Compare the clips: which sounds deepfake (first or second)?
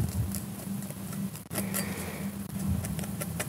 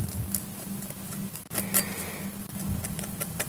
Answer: first